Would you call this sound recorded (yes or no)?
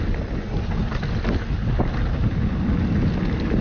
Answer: yes